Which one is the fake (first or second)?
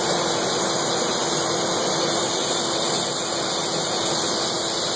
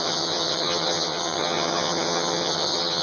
second